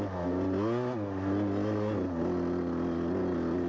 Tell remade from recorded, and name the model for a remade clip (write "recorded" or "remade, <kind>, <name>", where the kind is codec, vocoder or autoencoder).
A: recorded